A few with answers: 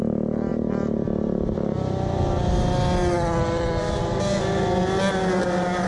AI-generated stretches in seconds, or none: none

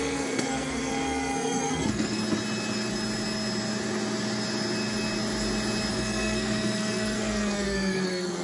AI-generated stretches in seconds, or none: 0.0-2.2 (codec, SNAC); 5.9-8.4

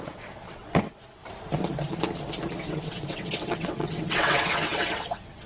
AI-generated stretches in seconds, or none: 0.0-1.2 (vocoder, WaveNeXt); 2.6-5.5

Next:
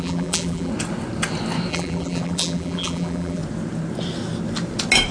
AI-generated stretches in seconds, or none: 0.0-0.7 (vocoder, BigVGAN v2); 1.7-3.4

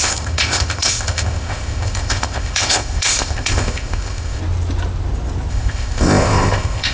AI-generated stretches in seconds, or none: 0.0-4.4 (codec, ZipCodec); 5.5-6.9

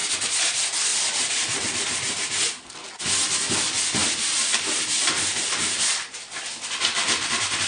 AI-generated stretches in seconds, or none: 0.0-0.5 (vocoder, BigVGAN v2); 0.9-2.2; 4.0-7.7